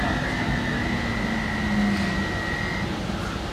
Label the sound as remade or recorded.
recorded